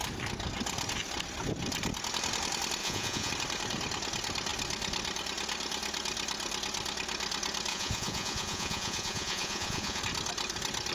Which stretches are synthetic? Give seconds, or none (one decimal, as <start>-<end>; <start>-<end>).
2.8-3.3; 7.7-10.0